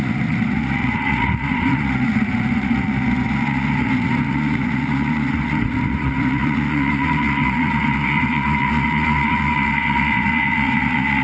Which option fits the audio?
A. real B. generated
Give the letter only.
B